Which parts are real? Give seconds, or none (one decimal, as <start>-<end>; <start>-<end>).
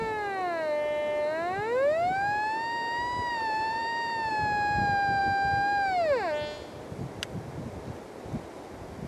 0.0-3.3; 4.3-9.1